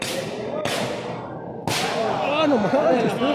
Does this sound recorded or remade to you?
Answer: recorded